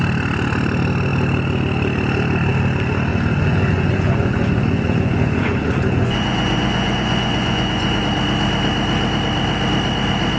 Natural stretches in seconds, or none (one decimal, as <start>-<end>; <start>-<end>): 0.0-3.1; 8.0-10.4